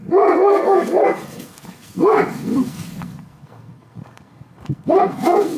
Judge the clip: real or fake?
fake